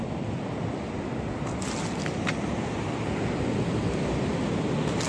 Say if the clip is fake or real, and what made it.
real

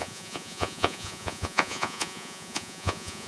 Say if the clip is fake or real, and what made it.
fake, vocoder, Vocos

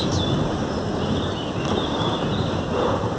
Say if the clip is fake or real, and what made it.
real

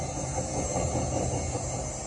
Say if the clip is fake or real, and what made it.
real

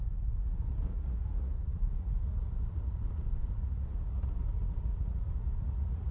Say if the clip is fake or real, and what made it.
fake, vocoder, Vocos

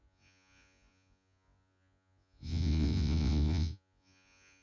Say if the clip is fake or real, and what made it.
fake, vocoder, Vocos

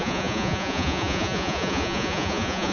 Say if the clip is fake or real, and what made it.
fake, vocoder, Vocos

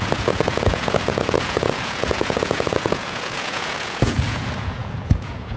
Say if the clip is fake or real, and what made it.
fake, vocoder, Vocos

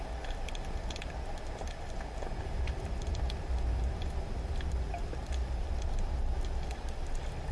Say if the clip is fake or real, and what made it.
real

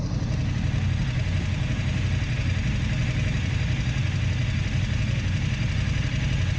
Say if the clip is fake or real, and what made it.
real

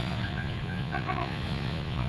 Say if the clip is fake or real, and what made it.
fake, vocoder, Vocos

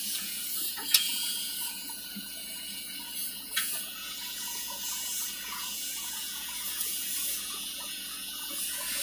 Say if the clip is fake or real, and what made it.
fake, vocoder, Vocos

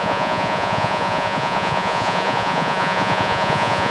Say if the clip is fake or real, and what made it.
fake, vocoder, Vocos